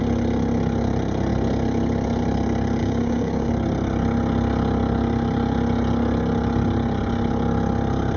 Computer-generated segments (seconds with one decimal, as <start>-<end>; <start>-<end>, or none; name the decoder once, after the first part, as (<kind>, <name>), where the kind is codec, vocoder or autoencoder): 2.8-3.5 (codec, DAC)